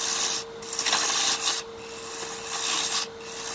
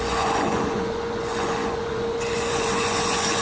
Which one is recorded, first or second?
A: first